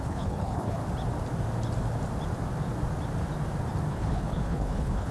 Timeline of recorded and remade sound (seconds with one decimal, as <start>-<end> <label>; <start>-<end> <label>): 0.0-0.8 remade; 0.8-3.9 recorded; 3.9-5.1 remade